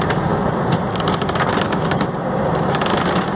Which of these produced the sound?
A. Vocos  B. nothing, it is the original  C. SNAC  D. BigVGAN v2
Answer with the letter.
B